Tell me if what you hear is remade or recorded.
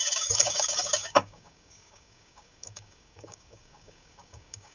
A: remade